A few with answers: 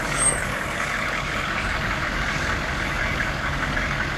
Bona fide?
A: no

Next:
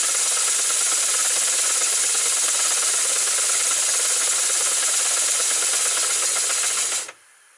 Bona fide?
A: yes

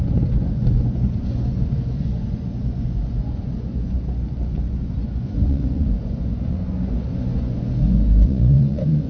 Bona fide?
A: no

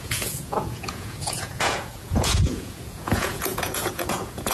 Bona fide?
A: no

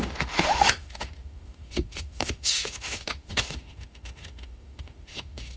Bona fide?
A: no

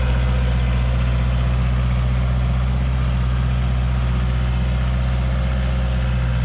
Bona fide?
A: yes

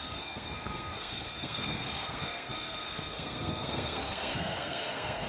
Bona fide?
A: no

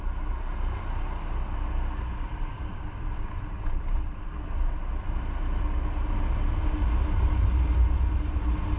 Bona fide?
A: yes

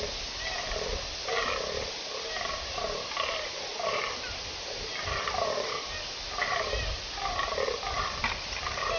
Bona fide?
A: yes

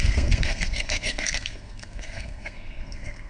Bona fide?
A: no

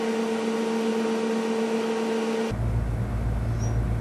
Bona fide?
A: yes